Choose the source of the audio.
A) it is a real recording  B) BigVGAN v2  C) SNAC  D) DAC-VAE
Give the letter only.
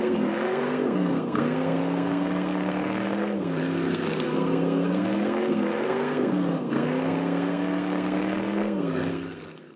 C